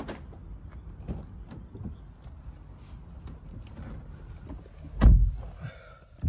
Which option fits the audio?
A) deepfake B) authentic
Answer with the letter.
B